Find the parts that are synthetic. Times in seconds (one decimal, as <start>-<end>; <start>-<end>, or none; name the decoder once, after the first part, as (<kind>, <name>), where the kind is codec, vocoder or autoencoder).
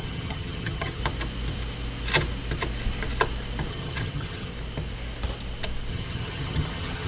0.0-1.0 (vocoder, HiFi-GAN); 3.7-4.5; 5.9-7.1